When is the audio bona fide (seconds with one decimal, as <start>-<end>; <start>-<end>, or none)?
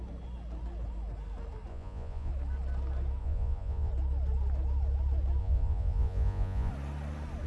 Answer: 0.0-1.7; 2.3-3.2; 3.9-5.4; 6.7-7.5